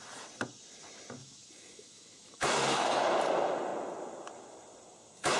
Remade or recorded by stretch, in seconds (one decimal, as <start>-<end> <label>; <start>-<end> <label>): 0.0-1.2 recorded; 1.2-2.9 remade; 2.9-5.4 recorded